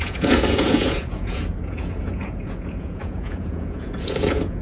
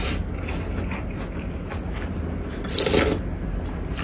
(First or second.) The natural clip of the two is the second